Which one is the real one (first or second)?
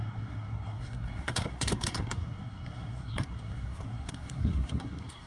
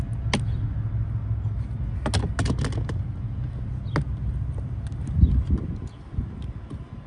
second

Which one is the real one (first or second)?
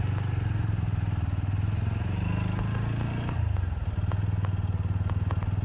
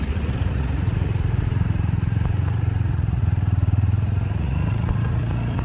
first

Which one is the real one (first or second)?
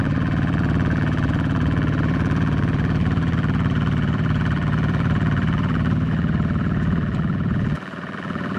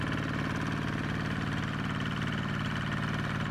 second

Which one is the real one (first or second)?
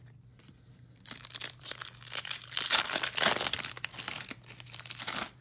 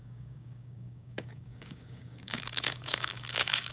first